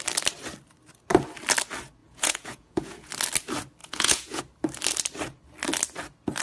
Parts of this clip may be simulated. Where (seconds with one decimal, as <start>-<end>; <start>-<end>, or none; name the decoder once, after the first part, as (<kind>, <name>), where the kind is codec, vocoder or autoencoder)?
2.0-3.1 (vocoder, Vocos); 3.8-4.4